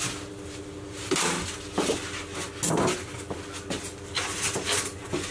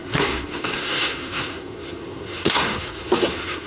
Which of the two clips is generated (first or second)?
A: second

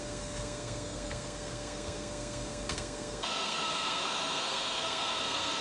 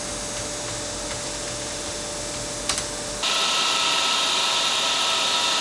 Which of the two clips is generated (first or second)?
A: first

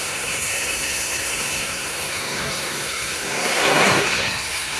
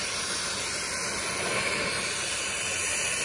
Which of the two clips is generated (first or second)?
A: first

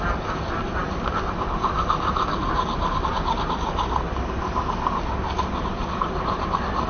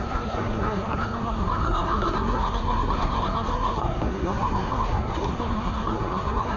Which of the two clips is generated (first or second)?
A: second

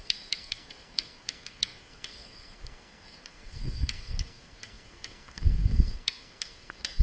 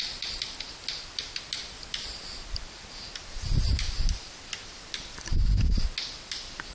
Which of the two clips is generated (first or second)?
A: first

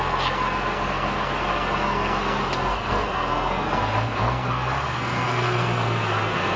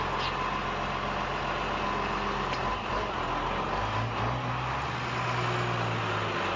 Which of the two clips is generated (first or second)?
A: first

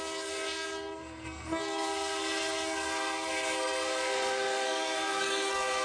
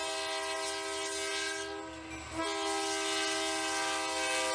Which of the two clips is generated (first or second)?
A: first